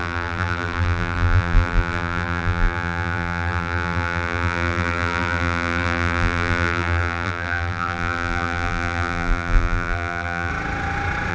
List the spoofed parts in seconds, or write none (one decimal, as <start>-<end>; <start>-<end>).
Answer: 0.0-10.5

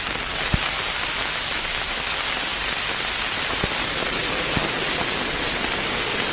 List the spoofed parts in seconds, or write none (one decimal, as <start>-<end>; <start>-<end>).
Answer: 1.1-2.0

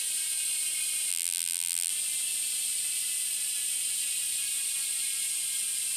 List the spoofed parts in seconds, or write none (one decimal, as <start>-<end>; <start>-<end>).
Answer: 1.1-1.9

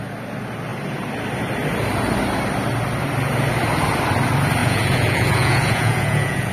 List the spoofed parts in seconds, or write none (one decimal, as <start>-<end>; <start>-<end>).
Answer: 4.6-6.5